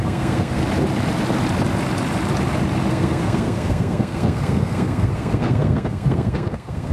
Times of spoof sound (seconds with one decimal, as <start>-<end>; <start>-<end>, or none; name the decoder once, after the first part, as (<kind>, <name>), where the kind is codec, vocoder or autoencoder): 0.0-0.6 (codec, SNAC); 2.9-6.9